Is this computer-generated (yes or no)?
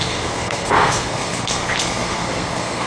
yes